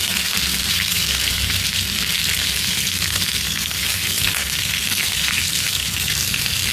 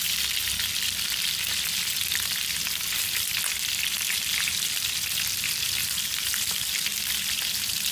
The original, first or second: second